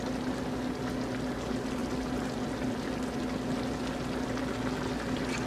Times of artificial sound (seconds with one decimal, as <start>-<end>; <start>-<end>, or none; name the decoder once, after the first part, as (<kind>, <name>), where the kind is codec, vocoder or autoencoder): none